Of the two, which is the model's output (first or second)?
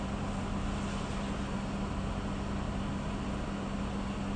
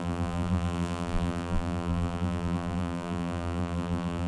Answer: second